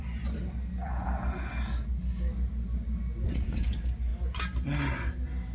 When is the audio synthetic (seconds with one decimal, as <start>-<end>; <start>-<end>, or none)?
none